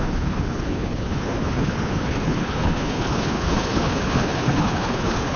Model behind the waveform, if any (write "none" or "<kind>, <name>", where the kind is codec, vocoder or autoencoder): codec, HILCodec